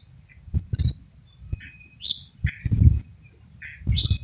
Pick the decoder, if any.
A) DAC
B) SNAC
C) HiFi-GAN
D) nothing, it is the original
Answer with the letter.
D